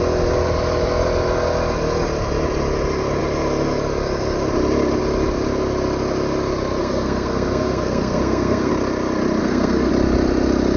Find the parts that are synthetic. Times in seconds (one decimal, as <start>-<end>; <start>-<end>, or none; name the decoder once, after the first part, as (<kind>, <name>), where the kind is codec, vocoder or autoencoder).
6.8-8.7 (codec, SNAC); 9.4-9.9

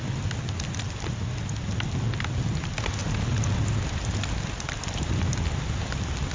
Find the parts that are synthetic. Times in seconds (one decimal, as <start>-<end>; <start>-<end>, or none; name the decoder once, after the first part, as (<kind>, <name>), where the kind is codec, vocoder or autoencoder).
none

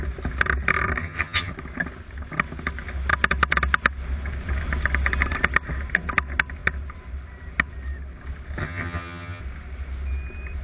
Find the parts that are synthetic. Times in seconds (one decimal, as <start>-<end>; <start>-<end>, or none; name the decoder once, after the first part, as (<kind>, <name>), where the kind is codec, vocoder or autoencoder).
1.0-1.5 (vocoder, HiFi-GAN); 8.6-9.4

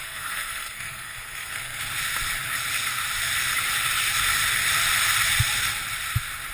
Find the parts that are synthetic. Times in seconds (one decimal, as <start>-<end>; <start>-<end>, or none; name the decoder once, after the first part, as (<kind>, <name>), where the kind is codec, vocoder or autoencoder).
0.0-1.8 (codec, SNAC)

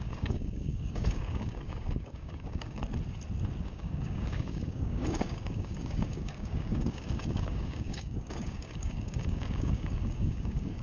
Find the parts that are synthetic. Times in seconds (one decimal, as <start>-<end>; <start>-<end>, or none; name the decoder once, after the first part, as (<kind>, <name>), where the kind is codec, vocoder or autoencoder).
0.0-2.8 (codec, DAC); 3.6-10.8

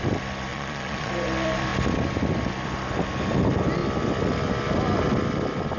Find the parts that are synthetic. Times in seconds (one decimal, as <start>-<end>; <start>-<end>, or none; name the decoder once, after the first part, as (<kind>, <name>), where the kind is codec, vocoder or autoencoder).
0.5-1.1 (vocoder, Vocos)

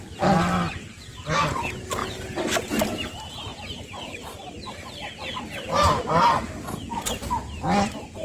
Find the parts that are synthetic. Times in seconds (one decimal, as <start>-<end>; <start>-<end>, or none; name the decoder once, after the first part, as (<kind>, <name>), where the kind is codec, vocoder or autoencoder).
2.0-2.7 (vocoder, BigVGAN v2)

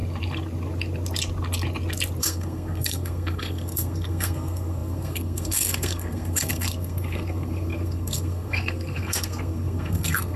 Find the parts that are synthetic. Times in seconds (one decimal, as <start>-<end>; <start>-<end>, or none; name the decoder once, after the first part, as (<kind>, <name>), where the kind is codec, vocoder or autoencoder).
2.2-10.4 (codec, SNAC)